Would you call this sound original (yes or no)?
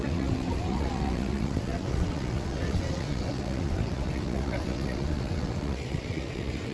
no